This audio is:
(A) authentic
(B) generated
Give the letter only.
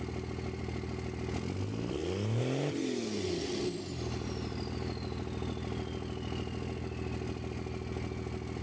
A